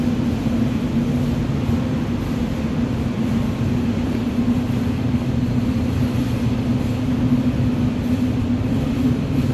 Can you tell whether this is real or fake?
real